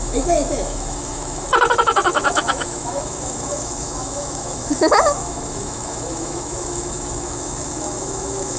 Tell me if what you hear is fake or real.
fake